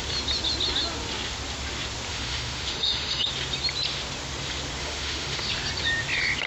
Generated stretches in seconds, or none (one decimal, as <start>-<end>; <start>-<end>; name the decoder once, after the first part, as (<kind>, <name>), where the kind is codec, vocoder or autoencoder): 2.1-3.3 (autoencoder, DAC-VAE); 4.8-5.5